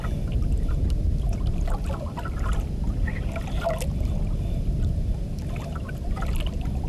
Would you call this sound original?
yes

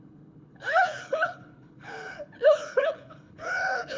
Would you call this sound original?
no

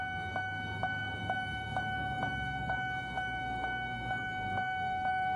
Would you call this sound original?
no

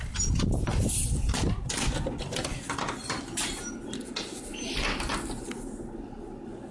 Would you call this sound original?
yes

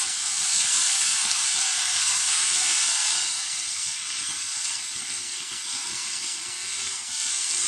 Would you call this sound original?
no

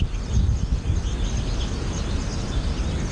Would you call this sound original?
yes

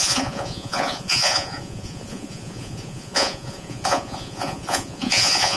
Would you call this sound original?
no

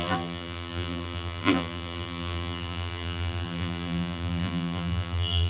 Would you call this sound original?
no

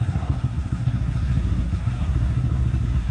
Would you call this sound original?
no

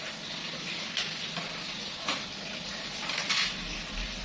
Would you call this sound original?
yes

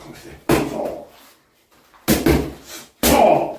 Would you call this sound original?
yes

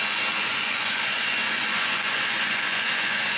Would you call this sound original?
no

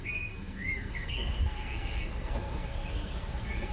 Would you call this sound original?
no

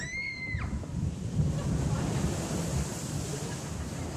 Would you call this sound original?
yes